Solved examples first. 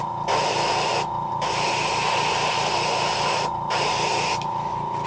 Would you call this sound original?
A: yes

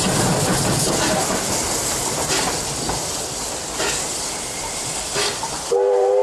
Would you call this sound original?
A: yes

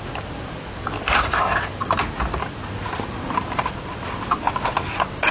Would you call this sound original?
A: yes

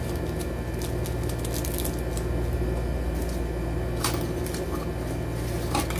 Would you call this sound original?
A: yes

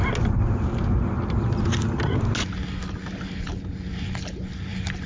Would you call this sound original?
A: yes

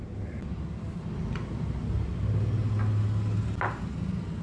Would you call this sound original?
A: yes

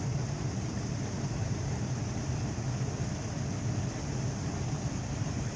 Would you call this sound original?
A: yes